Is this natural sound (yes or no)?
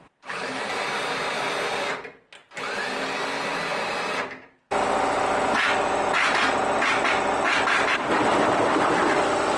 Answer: yes